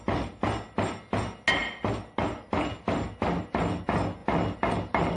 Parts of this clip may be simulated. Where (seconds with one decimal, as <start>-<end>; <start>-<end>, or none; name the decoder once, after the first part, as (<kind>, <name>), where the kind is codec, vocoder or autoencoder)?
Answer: none